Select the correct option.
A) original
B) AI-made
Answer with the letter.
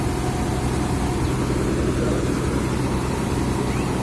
A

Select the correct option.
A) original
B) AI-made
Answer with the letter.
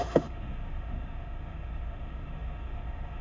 B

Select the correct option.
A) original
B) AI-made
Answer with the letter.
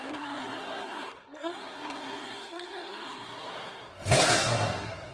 B